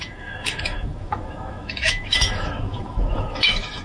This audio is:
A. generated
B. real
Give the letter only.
A